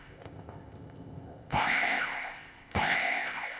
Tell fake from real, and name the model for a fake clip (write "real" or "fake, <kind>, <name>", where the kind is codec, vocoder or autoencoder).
fake, codec, ZipCodec